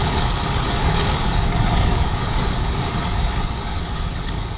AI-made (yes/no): yes